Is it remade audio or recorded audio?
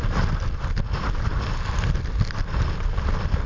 recorded